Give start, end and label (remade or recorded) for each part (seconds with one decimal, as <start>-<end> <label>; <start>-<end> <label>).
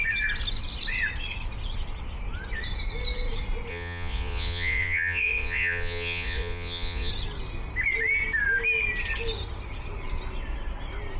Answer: 0.0-3.7 recorded; 3.7-7.1 remade; 7.1-11.2 recorded